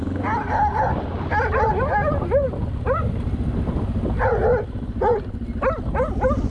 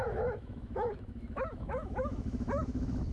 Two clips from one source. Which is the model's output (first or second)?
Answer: second